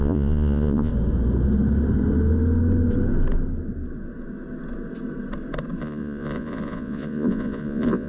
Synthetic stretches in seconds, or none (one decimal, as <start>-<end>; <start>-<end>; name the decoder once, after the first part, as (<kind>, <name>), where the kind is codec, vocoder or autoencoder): 0.0-0.9 (vocoder, Vocos); 5.8-8.1